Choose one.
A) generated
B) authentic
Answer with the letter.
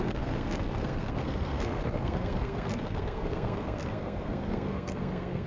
A